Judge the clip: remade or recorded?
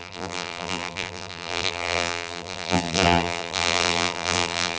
remade